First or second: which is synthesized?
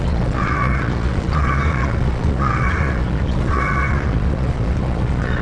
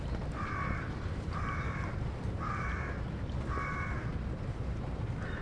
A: first